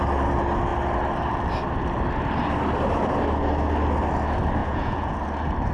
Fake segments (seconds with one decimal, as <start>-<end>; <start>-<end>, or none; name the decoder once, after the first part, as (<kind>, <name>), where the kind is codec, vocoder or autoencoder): 4.6-5.2 (vocoder, Vocos)

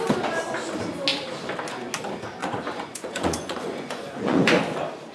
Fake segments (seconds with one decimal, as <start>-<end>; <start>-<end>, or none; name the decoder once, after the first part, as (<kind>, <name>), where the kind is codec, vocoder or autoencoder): 2.4-4.6 (vocoder, Vocos)